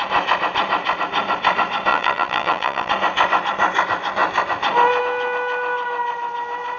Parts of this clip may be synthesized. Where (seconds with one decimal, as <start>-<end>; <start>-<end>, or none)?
1.9-2.9